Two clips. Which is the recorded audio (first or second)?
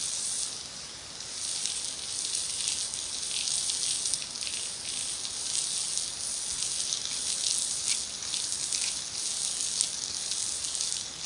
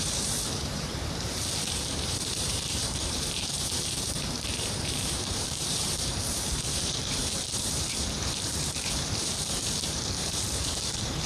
first